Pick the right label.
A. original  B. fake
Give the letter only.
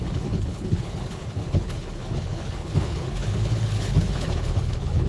B